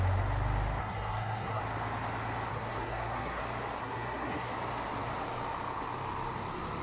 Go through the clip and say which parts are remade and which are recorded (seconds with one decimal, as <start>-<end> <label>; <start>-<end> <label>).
0.0-0.8 recorded; 0.8-1.6 remade; 1.6-2.5 recorded; 2.5-3.4 remade; 3.4-3.8 recorded; 3.8-4.5 remade; 4.5-6.8 recorded